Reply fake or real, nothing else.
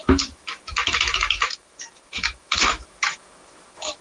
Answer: fake